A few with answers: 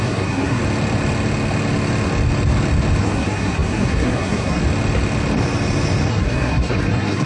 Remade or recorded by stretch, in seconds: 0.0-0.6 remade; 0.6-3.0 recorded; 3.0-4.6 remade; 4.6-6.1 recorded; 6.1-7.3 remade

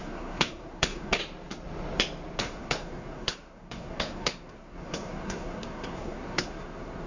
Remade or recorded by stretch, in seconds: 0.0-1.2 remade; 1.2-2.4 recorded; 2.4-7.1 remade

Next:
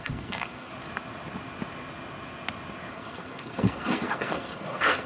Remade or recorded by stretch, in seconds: 0.0-0.7 remade; 0.7-2.9 recorded; 2.9-5.1 remade

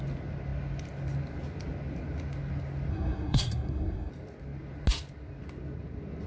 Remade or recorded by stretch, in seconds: 0.0-2.9 recorded; 2.9-4.1 remade; 4.1-6.3 recorded

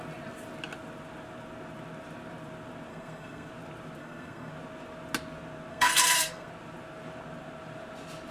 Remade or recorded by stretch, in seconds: 0.0-2.9 recorded; 2.9-3.5 remade; 3.5-4.0 recorded; 4.0-4.5 remade; 4.5-5.7 recorded; 5.7-6.5 remade; 6.5-8.3 recorded

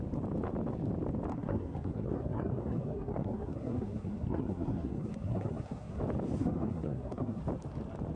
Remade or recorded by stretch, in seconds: 0.0-1.3 recorded; 1.3-6.0 remade; 6.0-6.4 recorded; 6.4-7.4 remade; 7.4-8.2 recorded

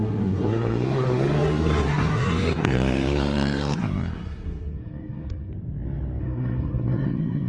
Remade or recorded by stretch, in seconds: 0.0-5.5 remade; 5.5-6.2 recorded; 6.2-7.5 remade